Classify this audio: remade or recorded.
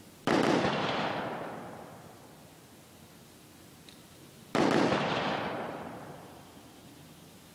recorded